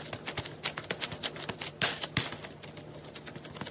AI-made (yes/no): no